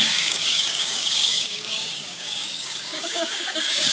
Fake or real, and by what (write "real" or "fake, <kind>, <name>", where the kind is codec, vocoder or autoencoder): fake, codec, DAC